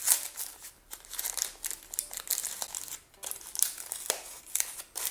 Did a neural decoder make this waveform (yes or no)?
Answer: no